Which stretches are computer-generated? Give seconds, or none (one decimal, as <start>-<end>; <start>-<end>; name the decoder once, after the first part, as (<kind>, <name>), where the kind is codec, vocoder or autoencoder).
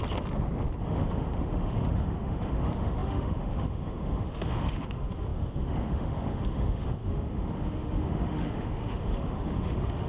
0.8-10.1 (autoencoder, DAC-VAE)